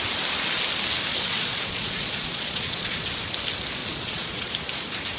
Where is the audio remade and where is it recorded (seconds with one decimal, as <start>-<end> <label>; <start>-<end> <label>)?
0.0-1.1 recorded; 1.1-3.1 remade; 3.1-3.8 recorded; 3.8-4.5 remade; 4.5-5.2 recorded